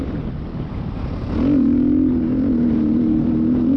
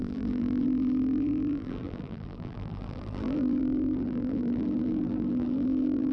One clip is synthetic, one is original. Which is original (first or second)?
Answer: first